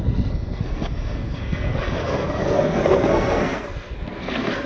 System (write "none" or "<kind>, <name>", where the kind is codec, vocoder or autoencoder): codec, SNAC